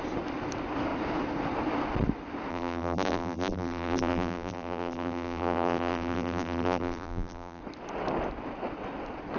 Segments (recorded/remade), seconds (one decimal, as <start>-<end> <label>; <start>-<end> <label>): 0.0-2.5 recorded; 2.5-7.6 remade; 7.6-9.4 recorded